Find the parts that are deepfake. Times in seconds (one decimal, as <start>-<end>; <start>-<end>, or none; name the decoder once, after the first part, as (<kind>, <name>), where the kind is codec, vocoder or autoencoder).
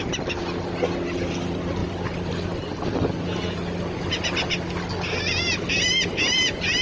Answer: none